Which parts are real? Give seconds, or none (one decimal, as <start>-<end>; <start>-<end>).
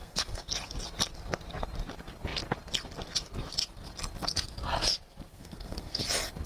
0.5-5.3; 6.0-6.5